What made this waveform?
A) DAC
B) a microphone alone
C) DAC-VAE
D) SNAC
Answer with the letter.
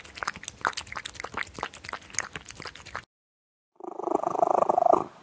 B